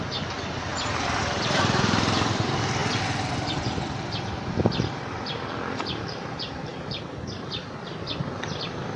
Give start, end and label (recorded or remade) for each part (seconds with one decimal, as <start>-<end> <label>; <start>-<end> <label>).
0.0-9.0 remade